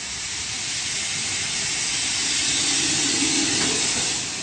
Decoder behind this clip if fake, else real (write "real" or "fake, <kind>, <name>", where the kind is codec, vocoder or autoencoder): real